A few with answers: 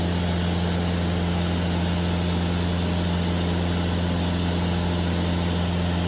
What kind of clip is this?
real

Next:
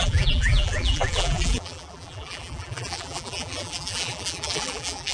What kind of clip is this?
fake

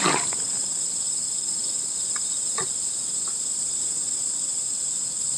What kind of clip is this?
real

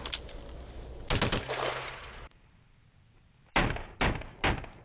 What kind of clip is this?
real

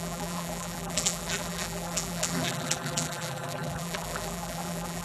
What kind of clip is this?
fake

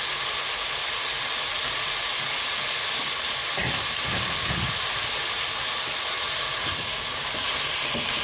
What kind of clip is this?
real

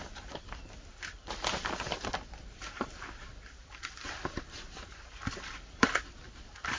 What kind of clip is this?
fake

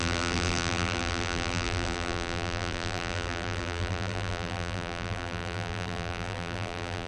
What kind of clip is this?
fake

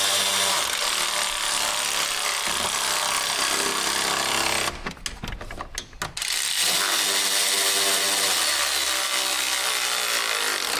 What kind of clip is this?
real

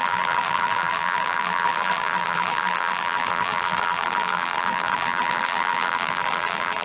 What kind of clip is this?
fake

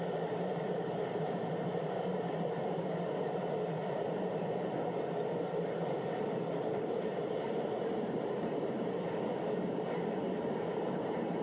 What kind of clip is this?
fake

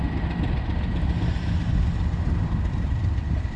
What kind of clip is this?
real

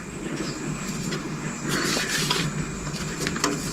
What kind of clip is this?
real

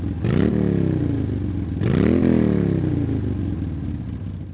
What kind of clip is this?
real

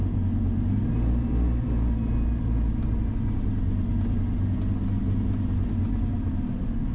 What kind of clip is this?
real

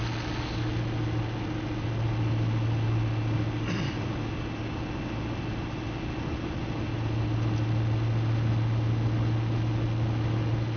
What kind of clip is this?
real